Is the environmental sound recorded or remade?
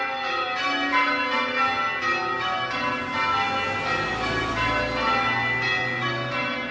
recorded